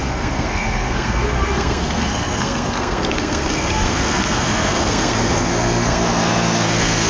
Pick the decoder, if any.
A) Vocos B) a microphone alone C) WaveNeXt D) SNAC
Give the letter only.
D